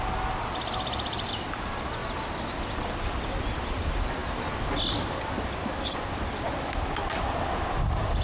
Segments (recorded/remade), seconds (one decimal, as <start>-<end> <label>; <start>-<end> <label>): 0.0-8.2 recorded